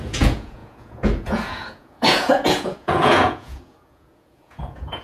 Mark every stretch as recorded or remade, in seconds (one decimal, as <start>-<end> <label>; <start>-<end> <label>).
0.0-5.0 remade